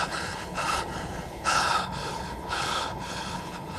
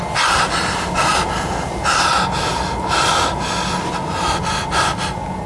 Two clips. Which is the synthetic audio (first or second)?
first